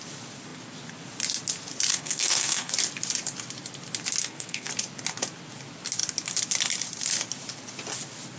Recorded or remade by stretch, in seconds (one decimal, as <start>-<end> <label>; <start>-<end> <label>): 0.0-1.9 recorded; 1.9-2.7 remade; 2.7-4.2 recorded; 4.2-4.7 remade; 4.7-8.4 recorded